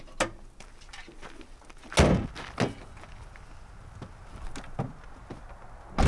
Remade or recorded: recorded